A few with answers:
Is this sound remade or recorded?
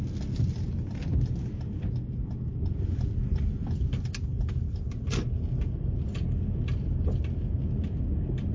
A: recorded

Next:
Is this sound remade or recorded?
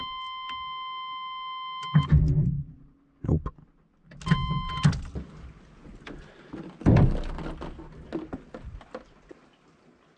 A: recorded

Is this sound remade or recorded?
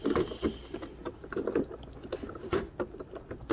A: recorded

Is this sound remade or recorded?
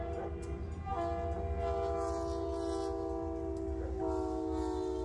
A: recorded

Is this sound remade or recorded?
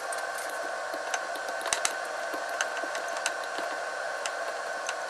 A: recorded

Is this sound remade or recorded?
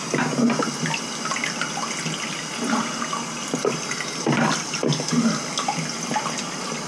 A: recorded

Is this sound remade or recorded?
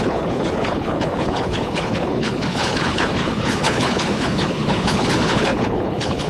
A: remade